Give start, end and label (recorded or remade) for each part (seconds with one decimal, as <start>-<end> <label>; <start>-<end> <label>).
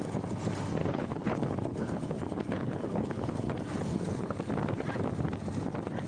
0.0-0.8 recorded; 0.8-3.5 remade; 3.5-3.9 recorded; 3.9-4.5 remade; 4.5-6.1 recorded